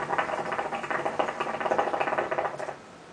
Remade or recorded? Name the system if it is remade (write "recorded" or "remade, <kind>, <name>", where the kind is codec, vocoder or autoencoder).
recorded